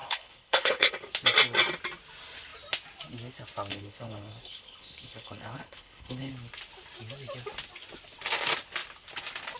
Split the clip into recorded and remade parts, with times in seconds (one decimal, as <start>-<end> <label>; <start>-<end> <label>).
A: 0.0-0.9 remade; 0.9-3.7 recorded; 3.7-6.3 remade; 6.3-9.6 recorded